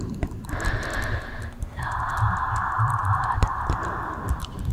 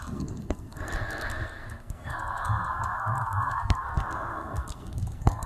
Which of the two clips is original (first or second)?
first